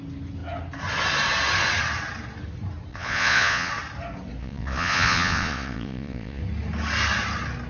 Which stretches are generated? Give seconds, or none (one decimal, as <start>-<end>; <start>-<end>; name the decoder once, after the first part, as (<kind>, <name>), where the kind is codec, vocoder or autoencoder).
2.9-3.7 (vocoder, Vocos); 4.4-6.4